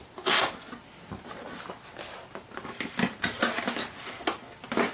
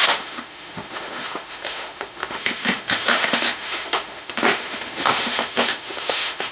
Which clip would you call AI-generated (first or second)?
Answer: second